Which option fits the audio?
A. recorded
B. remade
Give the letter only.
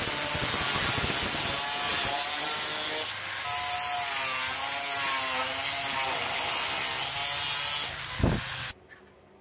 A